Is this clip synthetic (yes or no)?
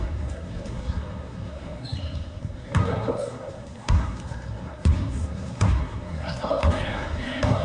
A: yes